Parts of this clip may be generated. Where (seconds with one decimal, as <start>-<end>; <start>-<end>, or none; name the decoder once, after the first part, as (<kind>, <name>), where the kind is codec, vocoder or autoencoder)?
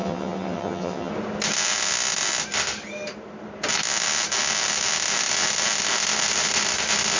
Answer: 0.0-1.1 (vocoder, HiFi-GAN)